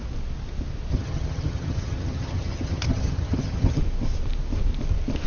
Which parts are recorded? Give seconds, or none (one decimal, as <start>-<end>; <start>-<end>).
0.0-0.9; 3.8-5.3